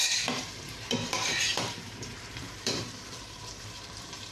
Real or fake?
fake